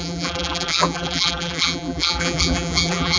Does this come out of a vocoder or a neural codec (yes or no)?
yes